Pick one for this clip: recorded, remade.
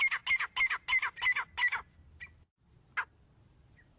recorded